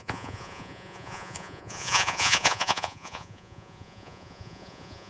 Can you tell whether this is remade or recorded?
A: remade